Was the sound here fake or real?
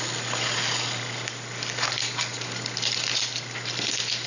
real